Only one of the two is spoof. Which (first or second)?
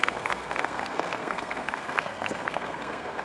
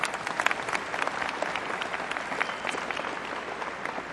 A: first